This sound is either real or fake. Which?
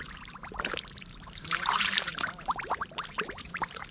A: fake